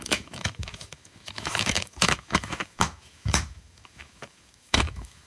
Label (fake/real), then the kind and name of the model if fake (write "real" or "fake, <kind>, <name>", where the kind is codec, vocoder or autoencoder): fake, autoencoder, DAC-VAE